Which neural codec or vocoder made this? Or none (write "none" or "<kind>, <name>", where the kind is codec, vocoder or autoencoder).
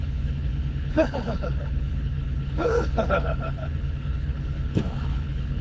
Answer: codec, HILCodec